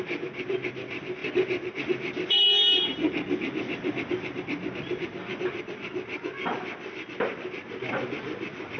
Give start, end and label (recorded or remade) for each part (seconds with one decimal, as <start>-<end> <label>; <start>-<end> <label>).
0.0-8.8 recorded